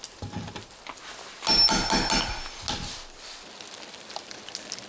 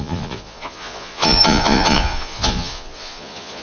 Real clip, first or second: first